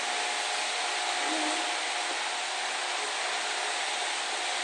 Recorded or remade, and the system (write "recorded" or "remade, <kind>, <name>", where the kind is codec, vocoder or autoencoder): recorded